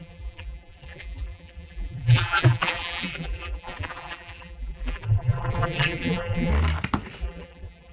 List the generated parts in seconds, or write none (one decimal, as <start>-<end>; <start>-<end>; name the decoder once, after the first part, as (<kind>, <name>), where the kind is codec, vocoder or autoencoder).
0.0-6.5 (vocoder, BigVGAN v2); 7.2-7.9